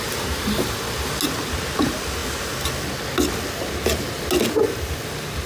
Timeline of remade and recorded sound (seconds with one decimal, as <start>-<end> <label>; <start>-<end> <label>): 0.0-5.5 recorded